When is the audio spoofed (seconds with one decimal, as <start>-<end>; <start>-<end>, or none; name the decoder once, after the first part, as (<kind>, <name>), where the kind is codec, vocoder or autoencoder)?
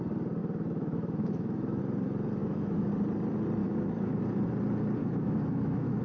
0.4-1.8 (autoencoder, DAC-VAE); 2.4-2.9; 3.6-4.2; 5.0-6.0